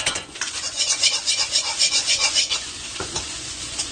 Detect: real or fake fake